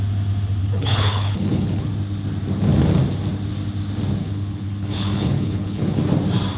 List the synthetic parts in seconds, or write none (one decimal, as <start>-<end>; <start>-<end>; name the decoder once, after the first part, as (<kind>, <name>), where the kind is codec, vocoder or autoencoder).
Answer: 0.6-1.9 (codec, HILCodec); 4.2-6.0